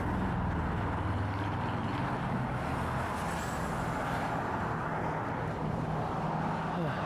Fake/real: real